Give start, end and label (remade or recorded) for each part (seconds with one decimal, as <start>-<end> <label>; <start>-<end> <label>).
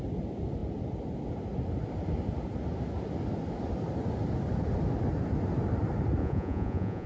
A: 0.0-6.2 recorded; 6.2-7.1 remade